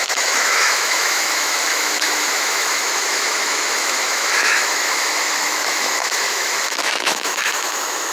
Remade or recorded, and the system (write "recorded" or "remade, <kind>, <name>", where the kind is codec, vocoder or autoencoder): remade, autoencoder, DAC-VAE